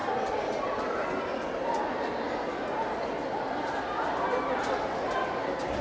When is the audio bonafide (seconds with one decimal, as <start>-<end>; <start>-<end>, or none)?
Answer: 0.0-5.8